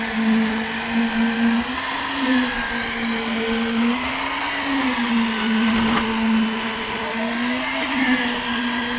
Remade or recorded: recorded